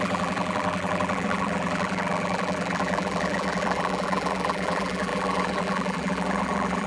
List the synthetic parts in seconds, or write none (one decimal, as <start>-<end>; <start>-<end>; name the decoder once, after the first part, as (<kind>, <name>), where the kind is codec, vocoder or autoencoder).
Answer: 0.0-6.9 (vocoder, BigVGAN v2)